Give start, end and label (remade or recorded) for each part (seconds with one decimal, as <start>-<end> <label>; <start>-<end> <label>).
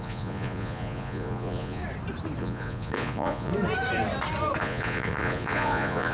0.0-1.8 remade; 1.8-2.4 recorded; 2.4-3.5 remade; 3.5-4.6 recorded; 4.6-6.1 remade